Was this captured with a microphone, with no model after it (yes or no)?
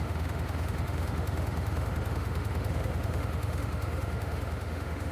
no